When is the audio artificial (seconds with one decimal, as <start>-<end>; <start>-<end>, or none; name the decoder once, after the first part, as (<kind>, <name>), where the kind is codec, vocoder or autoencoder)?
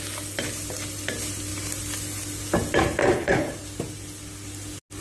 3.0-3.5 (codec, HILCodec)